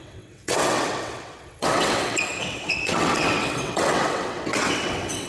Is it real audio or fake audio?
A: fake